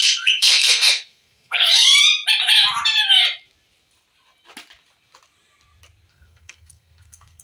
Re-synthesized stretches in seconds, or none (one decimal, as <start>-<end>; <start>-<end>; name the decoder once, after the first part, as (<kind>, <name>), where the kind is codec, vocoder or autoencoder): 0.0-2.0 (codec, SNAC); 6.1-7.4